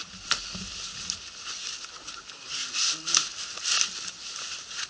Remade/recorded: recorded